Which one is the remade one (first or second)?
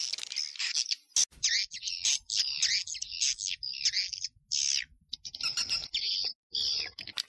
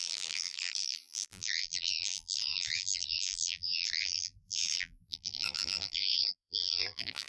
second